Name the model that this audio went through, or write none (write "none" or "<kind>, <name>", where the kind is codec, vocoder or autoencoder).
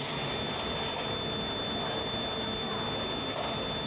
none